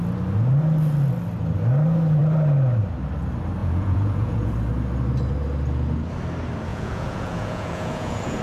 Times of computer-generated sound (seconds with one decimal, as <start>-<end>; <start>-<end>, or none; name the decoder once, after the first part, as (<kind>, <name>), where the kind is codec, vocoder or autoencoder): 3.6-4.5 (vocoder, Vocos); 6.7-8.4